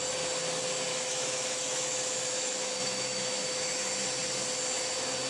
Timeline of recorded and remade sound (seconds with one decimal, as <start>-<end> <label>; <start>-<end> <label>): 0.0-0.9 recorded; 0.9-3.8 remade; 3.8-5.3 recorded